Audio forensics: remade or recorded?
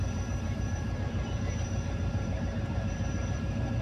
remade